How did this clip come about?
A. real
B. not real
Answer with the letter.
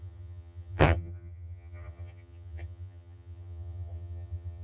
B